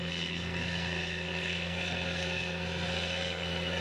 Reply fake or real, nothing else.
fake